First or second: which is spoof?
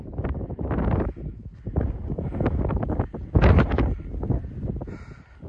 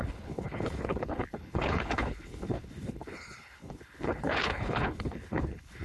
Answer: second